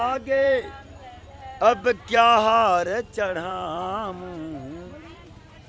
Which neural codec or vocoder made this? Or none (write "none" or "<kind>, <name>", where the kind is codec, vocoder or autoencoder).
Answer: vocoder, BigVGAN v2